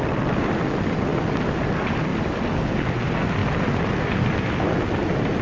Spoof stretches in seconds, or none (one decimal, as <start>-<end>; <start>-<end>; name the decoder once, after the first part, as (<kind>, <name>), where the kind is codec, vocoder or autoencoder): 2.1-2.9 (vocoder, BigVGAN v2); 3.4-4.7